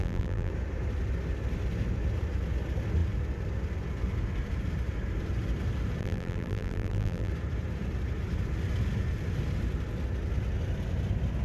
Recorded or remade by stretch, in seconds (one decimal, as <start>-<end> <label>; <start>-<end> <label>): 0.0-0.5 remade; 0.5-6.0 recorded; 6.0-7.3 remade; 7.3-11.4 recorded

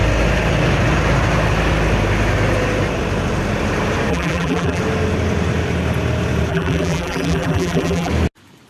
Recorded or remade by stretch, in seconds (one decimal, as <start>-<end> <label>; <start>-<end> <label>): 0.0-4.1 recorded; 4.1-4.8 remade; 4.8-6.5 recorded; 6.5-8.1 remade; 8.1-8.7 recorded

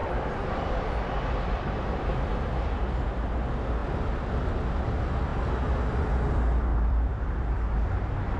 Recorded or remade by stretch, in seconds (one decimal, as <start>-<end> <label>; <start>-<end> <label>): 0.0-2.0 remade; 2.0-3.8 recorded; 3.8-4.5 remade; 4.5-6.7 recorded; 6.7-8.4 remade

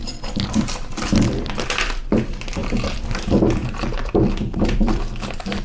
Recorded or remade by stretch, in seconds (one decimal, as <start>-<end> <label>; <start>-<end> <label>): 0.0-0.7 remade; 0.7-3.6 recorded; 3.6-5.0 remade; 5.0-5.6 recorded

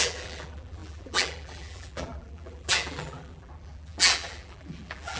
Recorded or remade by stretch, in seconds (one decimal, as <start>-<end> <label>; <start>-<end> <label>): 0.0-5.2 remade